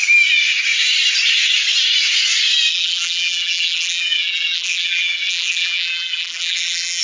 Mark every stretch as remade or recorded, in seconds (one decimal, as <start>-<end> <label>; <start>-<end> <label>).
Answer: 0.0-2.7 recorded; 2.7-7.0 remade